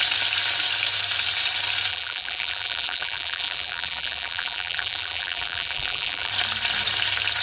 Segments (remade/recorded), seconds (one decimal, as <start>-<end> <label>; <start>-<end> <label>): 0.0-1.9 recorded; 1.9-6.3 remade; 6.3-7.4 recorded